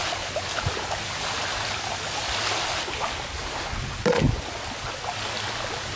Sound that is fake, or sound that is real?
real